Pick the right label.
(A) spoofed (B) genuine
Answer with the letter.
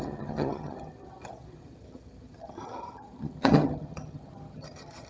A